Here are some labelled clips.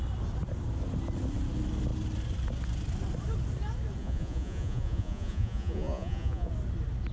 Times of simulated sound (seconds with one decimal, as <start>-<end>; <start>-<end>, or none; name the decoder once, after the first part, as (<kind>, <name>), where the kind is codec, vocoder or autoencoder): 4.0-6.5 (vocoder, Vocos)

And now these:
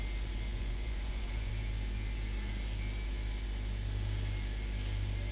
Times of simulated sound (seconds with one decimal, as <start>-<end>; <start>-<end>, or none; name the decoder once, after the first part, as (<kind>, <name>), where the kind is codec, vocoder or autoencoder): 0.5-1.5 (vocoder, Vocos)

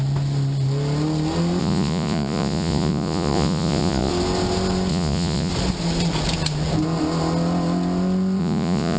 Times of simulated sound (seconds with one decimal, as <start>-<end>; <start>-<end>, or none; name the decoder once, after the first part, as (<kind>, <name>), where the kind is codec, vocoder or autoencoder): 1.6-4.1 (vocoder, Vocos); 4.9-5.5; 8.4-9.0

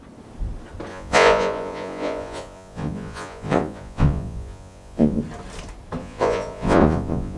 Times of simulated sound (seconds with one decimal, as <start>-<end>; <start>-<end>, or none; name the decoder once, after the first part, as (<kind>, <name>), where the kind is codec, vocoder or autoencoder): 0.9-5.2 (vocoder, Vocos); 6.0-7.4